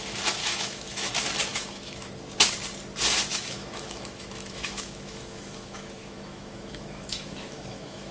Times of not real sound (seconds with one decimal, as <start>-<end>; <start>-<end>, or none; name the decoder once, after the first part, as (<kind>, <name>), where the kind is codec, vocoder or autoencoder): 0.4-1.1 (autoencoder, DAC-VAE); 1.5-2.1; 3.3-8.1